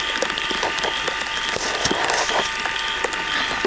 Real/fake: real